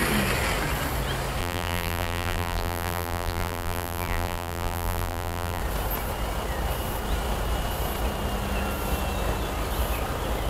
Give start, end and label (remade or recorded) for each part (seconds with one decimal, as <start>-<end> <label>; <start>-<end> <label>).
0.0-1.4 recorded; 1.4-5.6 remade; 5.6-10.5 recorded